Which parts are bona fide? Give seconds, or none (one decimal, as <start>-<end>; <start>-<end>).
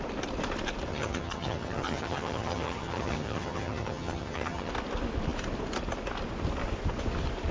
0.0-0.9; 4.7-7.5